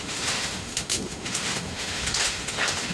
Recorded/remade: remade